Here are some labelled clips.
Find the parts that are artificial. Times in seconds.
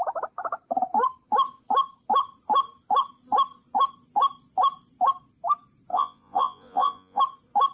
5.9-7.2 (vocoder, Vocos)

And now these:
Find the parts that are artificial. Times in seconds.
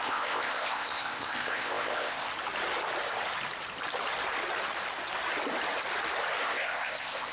0.0-2.3 (codec, ZipCodec); 6.4-7.3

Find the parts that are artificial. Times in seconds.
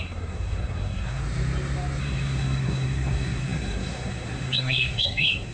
0.0-1.2 (codec, SNAC); 2.0-5.5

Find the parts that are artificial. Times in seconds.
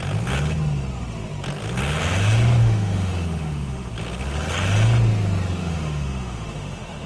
2.6-3.9 (autoencoder, DAC-VAE); 5.6-7.1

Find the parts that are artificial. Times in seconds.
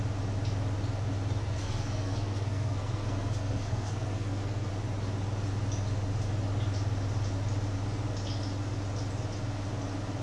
1.4-4.7 (codec, SNAC)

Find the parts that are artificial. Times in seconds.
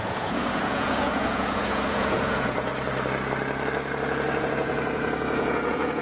0.0-2.7 (vocoder, Vocos); 4.4-6.0